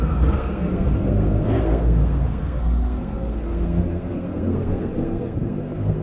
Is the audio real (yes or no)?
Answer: no